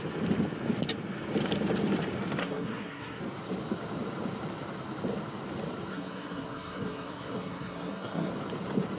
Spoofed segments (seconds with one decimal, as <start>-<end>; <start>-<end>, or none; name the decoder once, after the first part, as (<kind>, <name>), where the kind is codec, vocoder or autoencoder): 2.4-3.2 (codec, SNAC); 5.9-8.3